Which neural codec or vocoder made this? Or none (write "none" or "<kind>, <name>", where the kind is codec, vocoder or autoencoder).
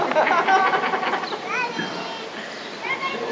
none